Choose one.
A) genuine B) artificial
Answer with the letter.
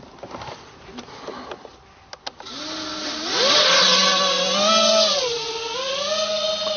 A